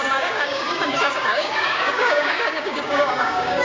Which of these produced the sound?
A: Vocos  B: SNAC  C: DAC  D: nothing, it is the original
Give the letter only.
C